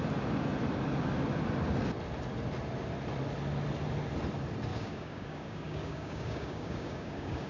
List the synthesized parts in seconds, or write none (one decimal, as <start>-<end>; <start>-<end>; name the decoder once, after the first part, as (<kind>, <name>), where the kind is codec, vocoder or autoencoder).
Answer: 4.7-7.5 (codec, DAC)